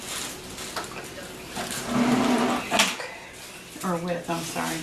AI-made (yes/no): no